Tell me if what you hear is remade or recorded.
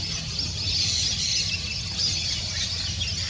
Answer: recorded